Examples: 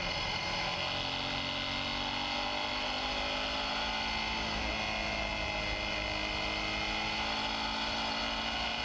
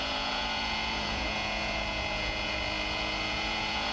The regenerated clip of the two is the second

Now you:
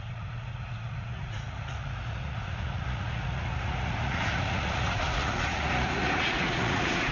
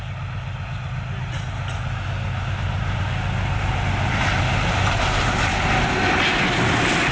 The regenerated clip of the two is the first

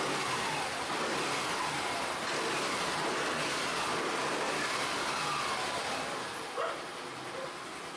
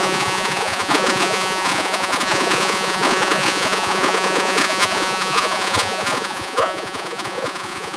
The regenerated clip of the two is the second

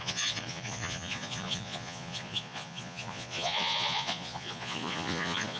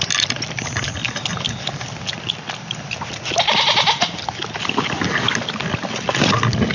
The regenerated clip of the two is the first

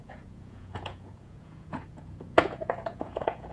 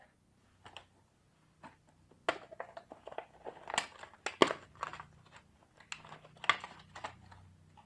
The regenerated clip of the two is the first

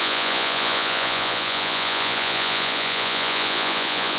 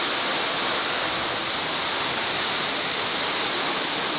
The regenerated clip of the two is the first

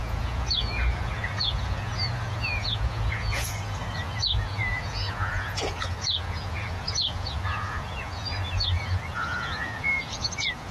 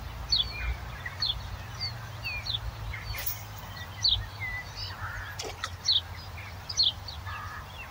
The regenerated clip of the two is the first